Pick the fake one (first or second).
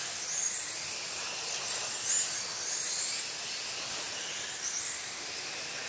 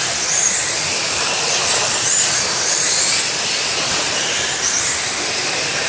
second